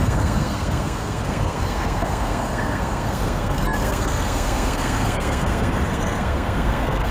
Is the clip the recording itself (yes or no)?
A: no